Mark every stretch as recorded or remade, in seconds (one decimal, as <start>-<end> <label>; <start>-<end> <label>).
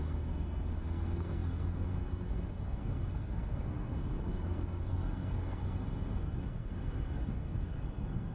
0.0-8.3 remade